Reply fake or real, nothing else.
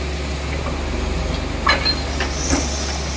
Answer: real